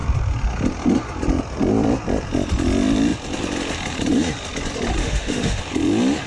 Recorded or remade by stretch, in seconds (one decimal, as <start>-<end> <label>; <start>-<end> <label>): 0.0-5.0 recorded; 5.0-5.6 remade; 5.6-6.3 recorded